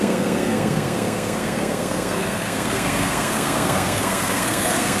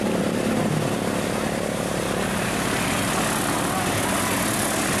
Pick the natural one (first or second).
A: second